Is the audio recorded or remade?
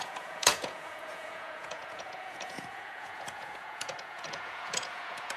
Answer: remade